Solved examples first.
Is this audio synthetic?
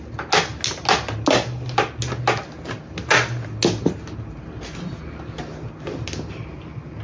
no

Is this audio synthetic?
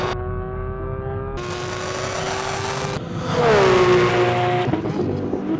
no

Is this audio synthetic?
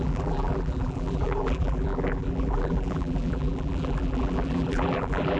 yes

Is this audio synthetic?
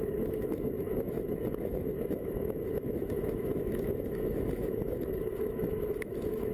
yes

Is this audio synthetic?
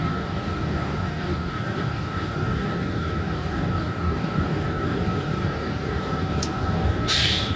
yes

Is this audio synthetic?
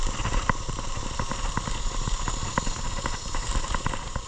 no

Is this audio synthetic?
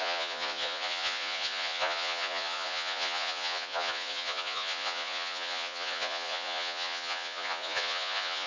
yes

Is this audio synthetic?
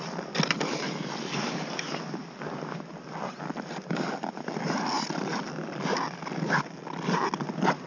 no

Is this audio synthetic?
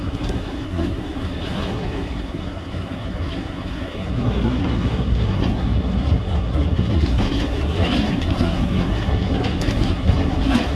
yes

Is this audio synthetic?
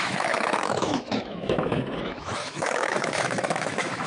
yes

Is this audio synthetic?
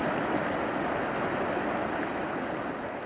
no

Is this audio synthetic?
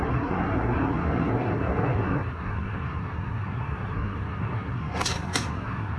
yes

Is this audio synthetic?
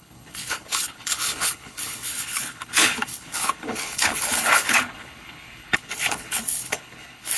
yes